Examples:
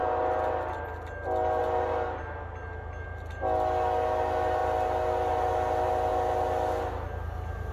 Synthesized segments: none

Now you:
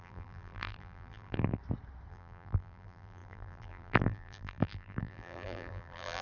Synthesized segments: 0.0-1.6; 2.1-6.2

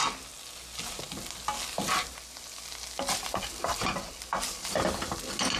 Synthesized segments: none

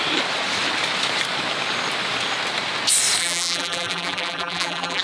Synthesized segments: 3.2-5.0

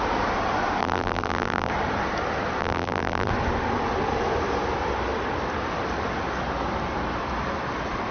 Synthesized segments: 0.8-1.7; 2.6-3.3

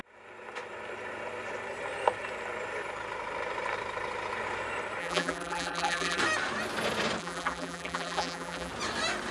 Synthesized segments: 5.0-6.2; 7.2-8.7